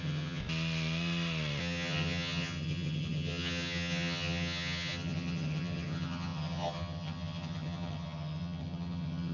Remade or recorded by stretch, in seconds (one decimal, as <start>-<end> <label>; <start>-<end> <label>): 0.0-0.4 remade; 0.4-1.6 recorded; 1.6-9.3 remade